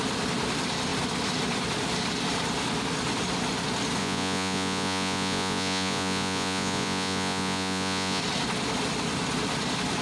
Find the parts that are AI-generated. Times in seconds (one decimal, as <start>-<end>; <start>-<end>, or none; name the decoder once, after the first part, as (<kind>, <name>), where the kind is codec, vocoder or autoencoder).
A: 4.0-8.2 (vocoder, Vocos)